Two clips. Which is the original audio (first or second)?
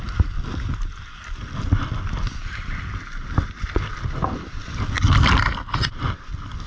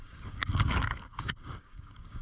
first